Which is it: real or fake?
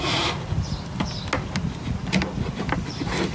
real